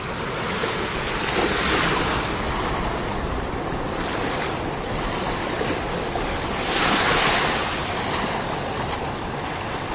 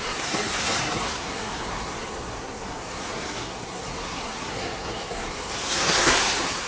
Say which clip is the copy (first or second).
second